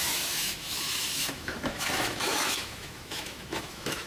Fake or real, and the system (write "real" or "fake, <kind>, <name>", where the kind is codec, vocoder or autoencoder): fake, autoencoder, DAC-VAE